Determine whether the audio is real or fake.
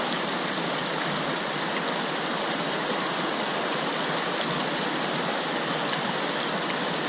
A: real